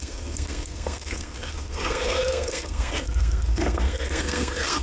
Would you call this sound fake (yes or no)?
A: yes